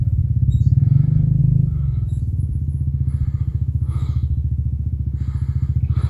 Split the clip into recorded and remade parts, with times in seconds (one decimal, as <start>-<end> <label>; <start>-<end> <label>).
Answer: 0.0-1.4 recorded; 1.4-2.4 remade; 2.4-3.5 recorded; 3.5-4.9 remade; 4.9-6.1 recorded